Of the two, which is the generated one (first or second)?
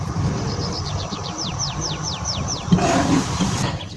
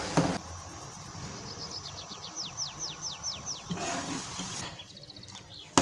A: first